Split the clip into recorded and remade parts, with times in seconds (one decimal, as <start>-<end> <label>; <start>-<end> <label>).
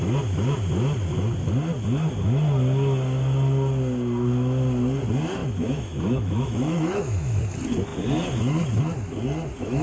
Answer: 0.0-5.4 recorded; 5.4-7.4 remade; 7.4-9.8 recorded